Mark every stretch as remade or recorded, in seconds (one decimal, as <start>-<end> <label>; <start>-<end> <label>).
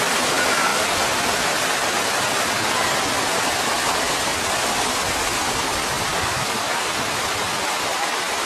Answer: 0.0-6.1 recorded; 6.1-6.9 remade; 6.9-8.5 recorded